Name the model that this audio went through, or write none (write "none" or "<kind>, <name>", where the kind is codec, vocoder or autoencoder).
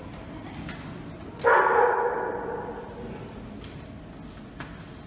none